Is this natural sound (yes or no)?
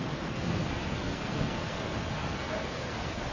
no